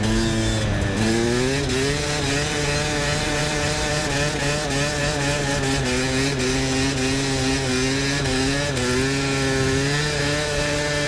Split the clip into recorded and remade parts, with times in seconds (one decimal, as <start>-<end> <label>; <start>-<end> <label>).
0.0-11.1 recorded